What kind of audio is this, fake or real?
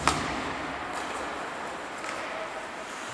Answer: real